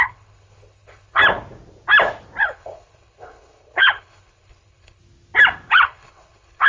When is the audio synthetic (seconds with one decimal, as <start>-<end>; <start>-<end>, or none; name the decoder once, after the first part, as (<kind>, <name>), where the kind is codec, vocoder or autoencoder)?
0.0-1.2 (codec, HILCodec); 2.4-5.0; 5.7-6.7